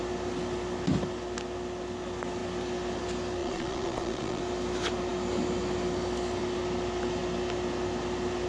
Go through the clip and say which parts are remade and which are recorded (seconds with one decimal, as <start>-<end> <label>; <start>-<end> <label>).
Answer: 0.0-3.4 recorded; 3.4-4.4 remade; 4.4-8.5 recorded